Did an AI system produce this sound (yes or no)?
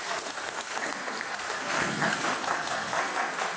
yes